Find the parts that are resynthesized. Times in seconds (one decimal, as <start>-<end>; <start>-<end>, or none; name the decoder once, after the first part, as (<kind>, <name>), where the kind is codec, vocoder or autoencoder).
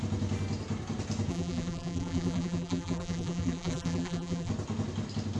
1.3-4.5 (vocoder, BigVGAN v2)